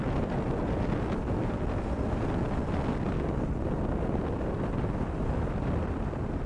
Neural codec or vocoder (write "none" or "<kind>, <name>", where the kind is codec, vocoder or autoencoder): none